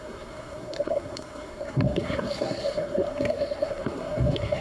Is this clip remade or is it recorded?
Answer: remade